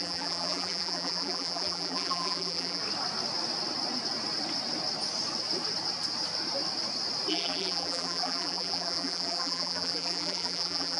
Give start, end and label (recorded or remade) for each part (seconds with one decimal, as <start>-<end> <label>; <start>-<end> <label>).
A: 0.0-2.8 remade; 2.8-7.3 recorded; 7.3-11.0 remade